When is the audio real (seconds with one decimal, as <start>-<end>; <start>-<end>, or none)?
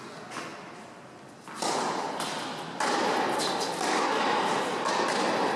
0.0-5.6